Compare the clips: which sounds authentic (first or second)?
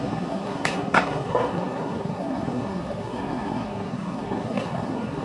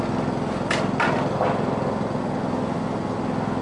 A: second